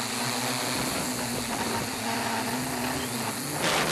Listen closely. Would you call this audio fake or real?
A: real